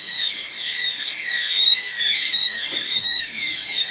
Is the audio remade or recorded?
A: remade